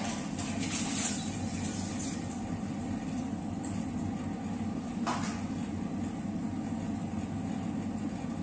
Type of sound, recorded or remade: recorded